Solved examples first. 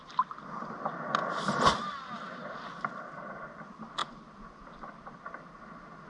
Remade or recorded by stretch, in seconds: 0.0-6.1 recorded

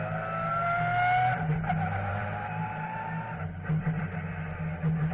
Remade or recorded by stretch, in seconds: 0.0-2.1 recorded; 2.1-4.6 remade; 4.6-5.1 recorded

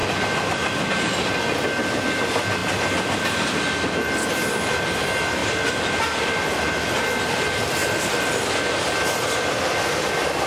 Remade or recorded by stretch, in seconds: 0.0-0.8 remade; 0.8-5.4 recorded; 5.4-6.3 remade; 6.3-7.8 recorded; 7.8-8.4 remade; 8.4-10.5 recorded

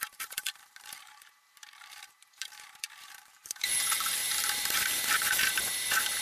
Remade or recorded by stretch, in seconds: 0.0-4.2 remade; 4.2-5.4 recorded; 5.4-6.2 remade

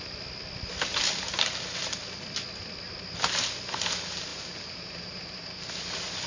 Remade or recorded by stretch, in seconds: 0.0-4.3 recorded; 4.3-5.7 remade; 5.7-6.3 recorded

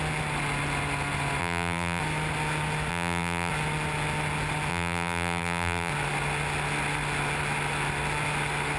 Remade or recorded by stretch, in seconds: 0.0-1.4 recorded; 1.4-2.0 remade; 2.0-2.9 recorded; 2.9-3.5 remade; 3.5-4.7 recorded; 4.7-5.9 remade; 5.9-8.8 recorded